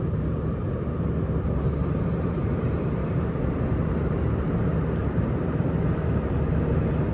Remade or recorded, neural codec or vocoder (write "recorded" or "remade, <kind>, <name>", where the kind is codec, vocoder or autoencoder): remade, vocoder, BigVGAN v2